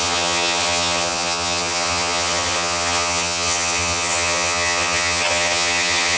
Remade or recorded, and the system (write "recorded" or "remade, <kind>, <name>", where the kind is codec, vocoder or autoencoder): remade, vocoder, HiFi-GAN